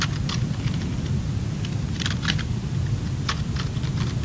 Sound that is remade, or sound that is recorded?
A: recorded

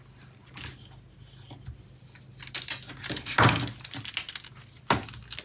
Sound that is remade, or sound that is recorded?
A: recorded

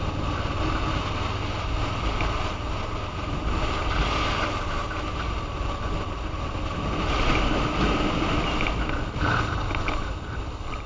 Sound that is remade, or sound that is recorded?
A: recorded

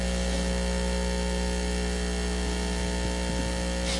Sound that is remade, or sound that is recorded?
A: recorded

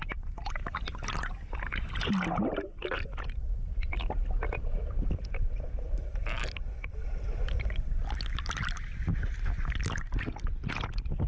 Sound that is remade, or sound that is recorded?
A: recorded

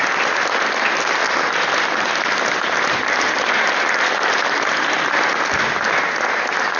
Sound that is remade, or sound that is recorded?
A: recorded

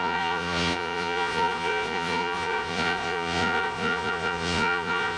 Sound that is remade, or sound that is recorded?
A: remade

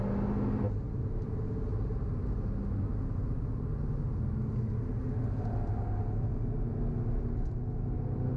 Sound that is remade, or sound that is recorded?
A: recorded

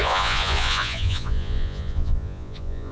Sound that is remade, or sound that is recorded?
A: remade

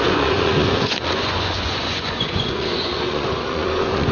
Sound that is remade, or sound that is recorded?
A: remade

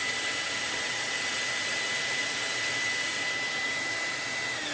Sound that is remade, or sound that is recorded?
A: recorded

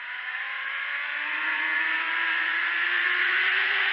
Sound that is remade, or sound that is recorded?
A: remade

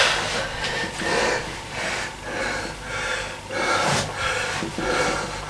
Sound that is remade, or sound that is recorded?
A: recorded